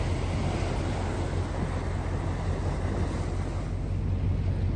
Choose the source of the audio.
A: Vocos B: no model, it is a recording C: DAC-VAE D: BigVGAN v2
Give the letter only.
B